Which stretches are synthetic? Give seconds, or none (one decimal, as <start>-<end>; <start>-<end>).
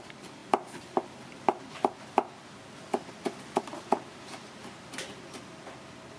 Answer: none